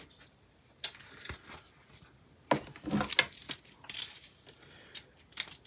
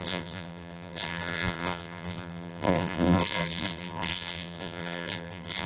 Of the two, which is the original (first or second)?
first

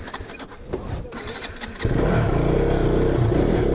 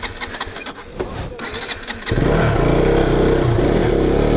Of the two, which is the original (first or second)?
second